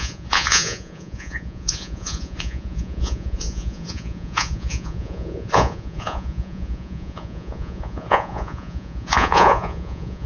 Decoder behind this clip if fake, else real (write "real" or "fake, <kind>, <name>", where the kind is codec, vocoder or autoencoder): fake, vocoder, Vocos